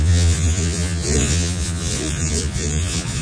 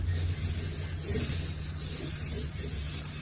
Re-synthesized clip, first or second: first